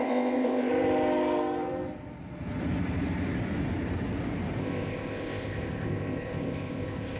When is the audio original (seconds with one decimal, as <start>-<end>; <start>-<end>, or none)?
0.7-4.6